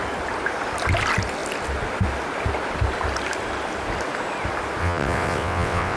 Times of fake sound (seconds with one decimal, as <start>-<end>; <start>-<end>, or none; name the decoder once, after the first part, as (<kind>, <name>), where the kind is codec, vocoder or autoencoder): 4.8-6.0 (vocoder, WaveNeXt)